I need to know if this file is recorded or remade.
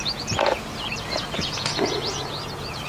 remade